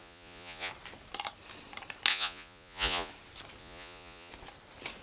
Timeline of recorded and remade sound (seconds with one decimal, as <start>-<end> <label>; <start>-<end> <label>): 0.0-0.7 remade; 0.7-2.1 recorded; 2.1-3.1 remade; 3.1-3.6 recorded; 3.6-4.3 remade; 4.3-5.0 recorded